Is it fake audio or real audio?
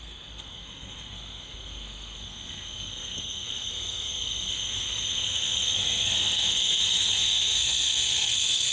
fake